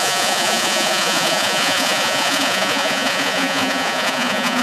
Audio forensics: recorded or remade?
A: remade